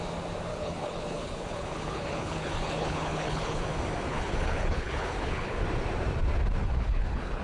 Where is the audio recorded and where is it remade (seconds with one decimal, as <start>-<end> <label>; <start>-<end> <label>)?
0.0-0.5 recorded; 0.5-3.6 remade; 3.6-4.1 recorded; 4.1-5.6 remade; 5.6-6.6 recorded; 6.6-7.4 remade